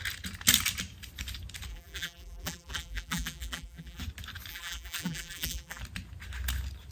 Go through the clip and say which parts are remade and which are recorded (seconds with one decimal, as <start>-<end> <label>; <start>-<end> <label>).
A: 0.0-1.7 recorded; 1.7-4.0 remade; 4.0-4.5 recorded; 4.5-5.8 remade; 5.8-6.9 recorded